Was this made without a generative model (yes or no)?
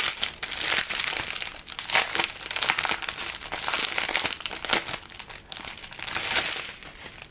yes